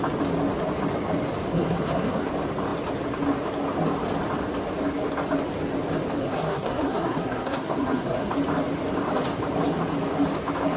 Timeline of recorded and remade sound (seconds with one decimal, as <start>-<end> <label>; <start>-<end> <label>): 0.0-1.5 recorded; 1.5-2.3 remade; 2.3-6.2 recorded; 6.2-8.3 remade; 8.3-10.8 recorded